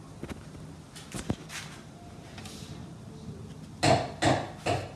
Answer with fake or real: real